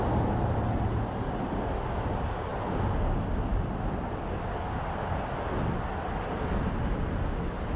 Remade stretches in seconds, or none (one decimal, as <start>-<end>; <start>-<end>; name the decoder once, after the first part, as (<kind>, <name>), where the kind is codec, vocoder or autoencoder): none